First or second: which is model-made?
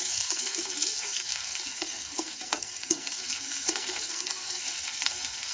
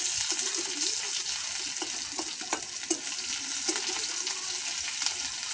first